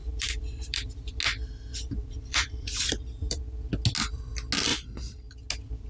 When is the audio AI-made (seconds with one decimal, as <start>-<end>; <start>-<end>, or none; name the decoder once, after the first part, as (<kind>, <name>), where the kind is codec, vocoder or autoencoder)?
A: 0.0-1.2 (vocoder, BigVGAN v2); 1.7-3.4; 4.7-5.5

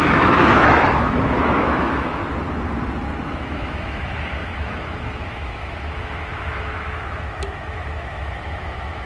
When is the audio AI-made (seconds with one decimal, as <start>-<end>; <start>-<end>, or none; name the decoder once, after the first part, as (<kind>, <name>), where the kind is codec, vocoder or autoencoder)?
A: 0.0-2.2 (autoencoder, DAC-VAE); 3.3-9.1

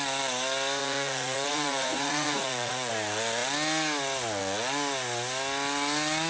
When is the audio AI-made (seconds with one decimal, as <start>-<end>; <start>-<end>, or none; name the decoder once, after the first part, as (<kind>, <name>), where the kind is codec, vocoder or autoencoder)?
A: 0.8-2.9 (vocoder, Vocos)

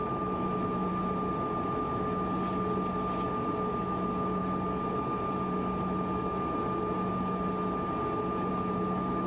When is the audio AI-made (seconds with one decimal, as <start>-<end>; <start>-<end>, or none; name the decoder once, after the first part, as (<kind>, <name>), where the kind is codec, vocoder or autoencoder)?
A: 0.0-0.9 (autoencoder, DAC-VAE); 3.8-4.4; 8.5-9.3

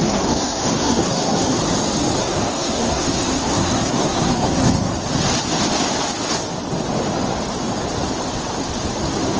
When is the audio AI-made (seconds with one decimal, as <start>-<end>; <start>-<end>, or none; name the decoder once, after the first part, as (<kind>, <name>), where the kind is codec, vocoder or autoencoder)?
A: 0.0-1.6 (codec, SNAC); 2.2-4.9

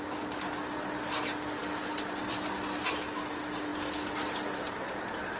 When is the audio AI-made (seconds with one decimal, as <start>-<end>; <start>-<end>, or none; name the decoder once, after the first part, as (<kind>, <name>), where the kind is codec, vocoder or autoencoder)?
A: none